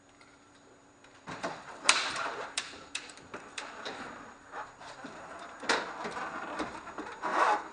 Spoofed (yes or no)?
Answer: yes